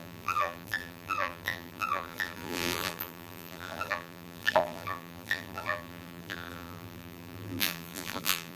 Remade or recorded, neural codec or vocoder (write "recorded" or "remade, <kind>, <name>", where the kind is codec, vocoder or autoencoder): remade, vocoder, BigVGAN v2